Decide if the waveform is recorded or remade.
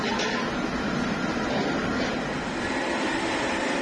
recorded